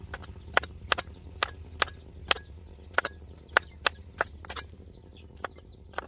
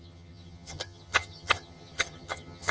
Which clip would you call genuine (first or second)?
first